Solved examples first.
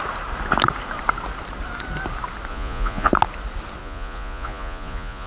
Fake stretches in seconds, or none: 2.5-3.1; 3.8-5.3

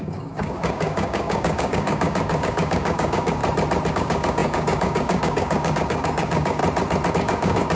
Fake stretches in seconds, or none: 0.0-3.4; 3.9-6.6; 7.1-7.8

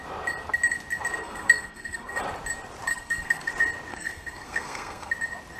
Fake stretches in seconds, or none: 1.2-2.2; 2.9-3.5; 3.9-5.1

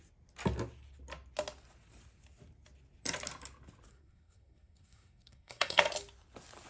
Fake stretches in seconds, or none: 3.9-5.8